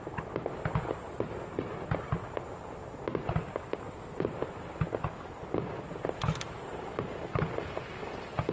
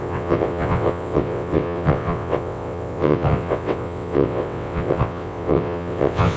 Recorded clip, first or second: first